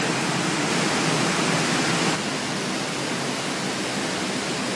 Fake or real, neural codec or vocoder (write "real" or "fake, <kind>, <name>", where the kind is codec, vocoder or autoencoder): real